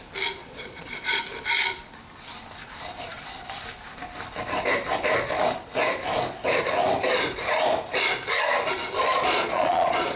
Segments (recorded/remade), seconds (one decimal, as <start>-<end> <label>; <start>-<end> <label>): 0.0-0.4 recorded; 0.4-1.2 remade; 1.2-9.1 recorded; 9.1-10.2 remade